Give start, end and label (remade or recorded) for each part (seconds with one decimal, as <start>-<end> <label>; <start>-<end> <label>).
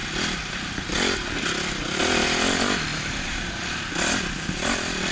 0.0-2.9 recorded; 2.9-3.6 remade; 3.6-5.1 recorded